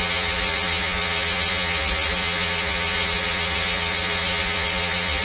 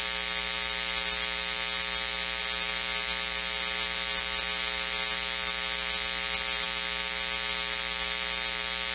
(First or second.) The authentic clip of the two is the second